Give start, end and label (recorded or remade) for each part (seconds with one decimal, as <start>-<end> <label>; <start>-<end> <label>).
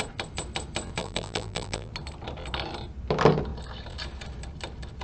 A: 0.0-1.0 recorded; 1.0-1.9 remade; 1.9-5.0 recorded